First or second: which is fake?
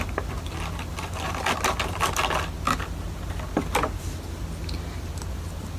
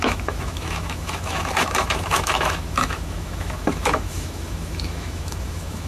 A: second